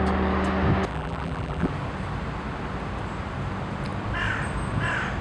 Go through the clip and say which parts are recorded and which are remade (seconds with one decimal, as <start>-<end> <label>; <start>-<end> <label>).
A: 0.0-0.9 recorded; 0.9-1.7 remade; 1.7-5.2 recorded